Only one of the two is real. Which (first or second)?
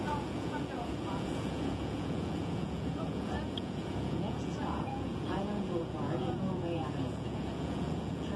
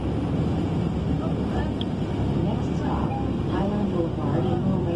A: second